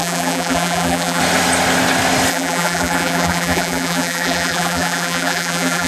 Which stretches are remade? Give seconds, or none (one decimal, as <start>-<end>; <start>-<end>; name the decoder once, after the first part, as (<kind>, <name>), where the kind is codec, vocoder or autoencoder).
0.0-1.2 (vocoder, BigVGAN v2); 2.3-5.9